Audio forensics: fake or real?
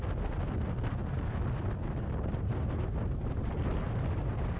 real